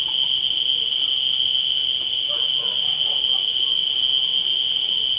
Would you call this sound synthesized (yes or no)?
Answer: no